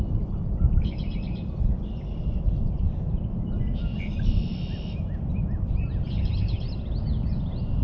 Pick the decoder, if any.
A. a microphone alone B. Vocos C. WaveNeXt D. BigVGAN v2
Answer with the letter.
D